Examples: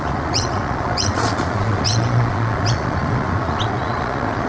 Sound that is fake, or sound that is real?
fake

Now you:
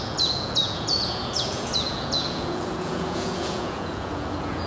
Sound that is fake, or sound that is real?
fake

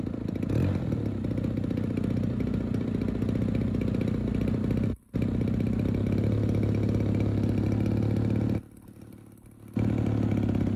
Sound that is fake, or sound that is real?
real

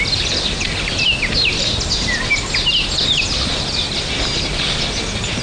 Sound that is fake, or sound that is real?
real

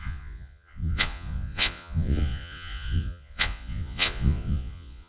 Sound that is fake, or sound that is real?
fake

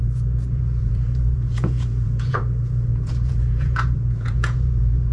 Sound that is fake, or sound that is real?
fake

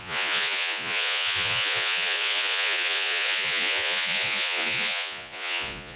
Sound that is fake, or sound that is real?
fake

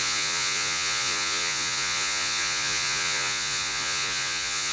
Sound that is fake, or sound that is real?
fake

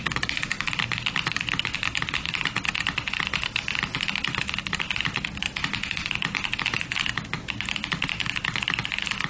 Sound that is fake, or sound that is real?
real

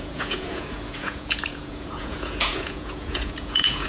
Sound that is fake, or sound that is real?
fake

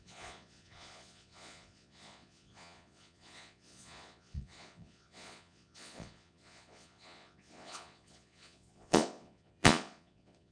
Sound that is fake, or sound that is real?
fake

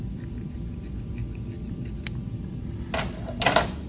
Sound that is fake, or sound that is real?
real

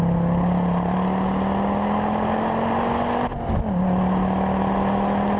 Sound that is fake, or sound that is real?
real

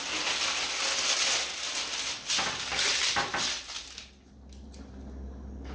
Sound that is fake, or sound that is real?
real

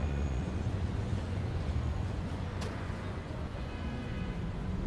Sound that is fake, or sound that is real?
fake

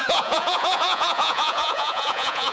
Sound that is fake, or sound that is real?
fake